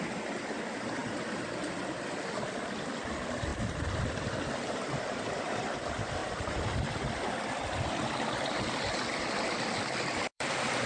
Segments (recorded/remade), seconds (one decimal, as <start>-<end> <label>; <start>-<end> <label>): 0.0-3.5 remade; 3.5-4.0 recorded; 4.0-6.2 remade; 6.2-9.6 recorded; 9.6-10.9 remade